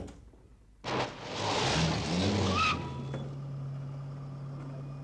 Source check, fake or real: real